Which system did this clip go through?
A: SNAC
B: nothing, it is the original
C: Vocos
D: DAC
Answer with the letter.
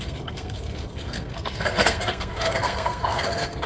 A